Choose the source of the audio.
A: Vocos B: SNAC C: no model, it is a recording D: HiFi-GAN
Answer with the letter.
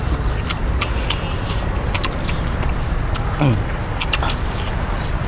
C